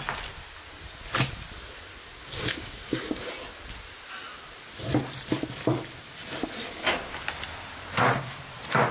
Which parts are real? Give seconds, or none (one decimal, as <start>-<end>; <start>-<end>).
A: 0.0-2.1; 3.3-8.9